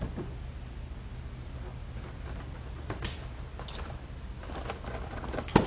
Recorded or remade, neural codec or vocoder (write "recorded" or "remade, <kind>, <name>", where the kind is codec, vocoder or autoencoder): recorded